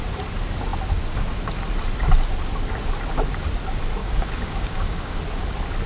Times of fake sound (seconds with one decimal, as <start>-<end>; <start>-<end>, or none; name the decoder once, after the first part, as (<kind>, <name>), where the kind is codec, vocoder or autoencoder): 4.0-5.2 (codec, DAC)